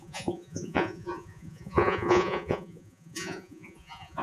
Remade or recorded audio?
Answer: remade